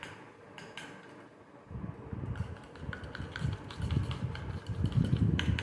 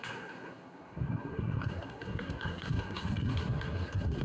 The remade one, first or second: second